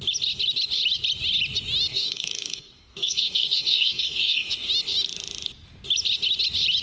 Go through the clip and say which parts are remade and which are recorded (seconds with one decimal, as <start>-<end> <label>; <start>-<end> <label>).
0.0-1.9 recorded; 1.9-4.7 remade; 4.7-6.8 recorded